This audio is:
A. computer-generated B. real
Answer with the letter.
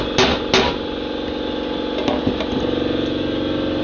B